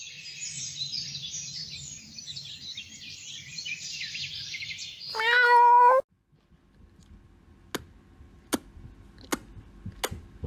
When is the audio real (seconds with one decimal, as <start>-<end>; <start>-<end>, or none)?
0.0-10.5